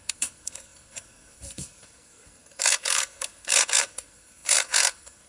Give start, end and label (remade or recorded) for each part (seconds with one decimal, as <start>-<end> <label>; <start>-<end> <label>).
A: 0.0-5.3 remade